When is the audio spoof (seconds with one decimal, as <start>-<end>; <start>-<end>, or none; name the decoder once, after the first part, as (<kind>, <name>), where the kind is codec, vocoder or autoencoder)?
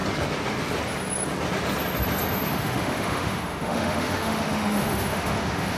2.5-5.8 (autoencoder, DAC-VAE)